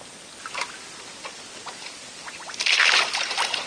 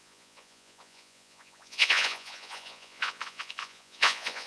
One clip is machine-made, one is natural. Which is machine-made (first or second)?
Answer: second